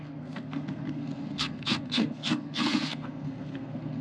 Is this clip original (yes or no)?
no